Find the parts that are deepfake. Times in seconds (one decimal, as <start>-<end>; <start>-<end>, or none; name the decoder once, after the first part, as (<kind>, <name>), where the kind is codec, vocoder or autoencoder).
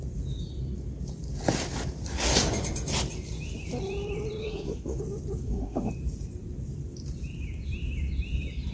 4.4-5.0 (codec, SNAC); 5.4-5.9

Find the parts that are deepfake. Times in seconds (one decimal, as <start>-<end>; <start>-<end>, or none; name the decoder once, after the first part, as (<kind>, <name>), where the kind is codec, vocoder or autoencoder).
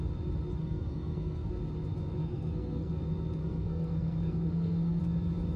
0.6-1.5 (codec, SNAC); 2.2-2.9; 3.4-5.0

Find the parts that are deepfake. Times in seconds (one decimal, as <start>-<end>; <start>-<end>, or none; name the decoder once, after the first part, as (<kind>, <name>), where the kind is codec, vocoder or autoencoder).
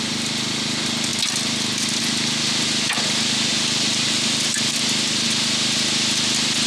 none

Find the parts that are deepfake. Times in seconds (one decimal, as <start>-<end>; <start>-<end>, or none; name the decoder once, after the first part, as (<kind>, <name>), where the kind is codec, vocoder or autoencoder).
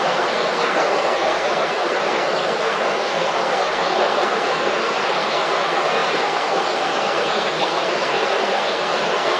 0.0-9.4 (codec, SNAC)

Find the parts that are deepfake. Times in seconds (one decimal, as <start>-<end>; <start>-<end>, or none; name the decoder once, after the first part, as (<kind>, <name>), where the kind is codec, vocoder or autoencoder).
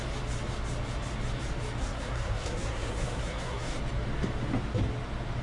1.8-3.8 (codec, SNAC)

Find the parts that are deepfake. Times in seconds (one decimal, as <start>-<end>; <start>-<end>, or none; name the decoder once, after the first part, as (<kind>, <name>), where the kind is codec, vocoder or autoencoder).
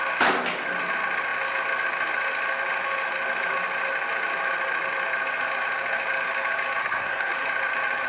6.8-7.3 (codec, SNAC)